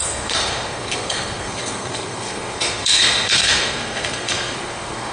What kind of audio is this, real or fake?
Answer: fake